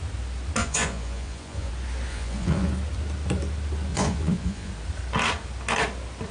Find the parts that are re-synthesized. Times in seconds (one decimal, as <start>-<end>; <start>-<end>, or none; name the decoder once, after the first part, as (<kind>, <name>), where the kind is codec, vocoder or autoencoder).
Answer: 0.6-1.7 (vocoder, Vocos); 2.1-2.7; 3.9-4.7